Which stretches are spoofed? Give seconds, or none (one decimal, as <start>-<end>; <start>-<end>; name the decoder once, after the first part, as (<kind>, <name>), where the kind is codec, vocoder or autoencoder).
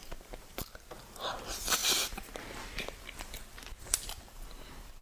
0.0-1.8 (vocoder, BigVGAN v2); 3.8-5.0